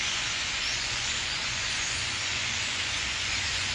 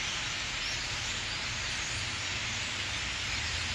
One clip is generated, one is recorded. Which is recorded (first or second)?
second